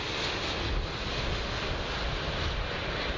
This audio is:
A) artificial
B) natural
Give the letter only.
B